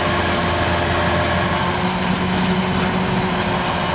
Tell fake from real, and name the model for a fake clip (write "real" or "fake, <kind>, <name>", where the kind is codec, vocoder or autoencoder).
real